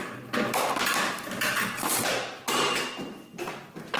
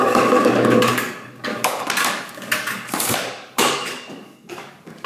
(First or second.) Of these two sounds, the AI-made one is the second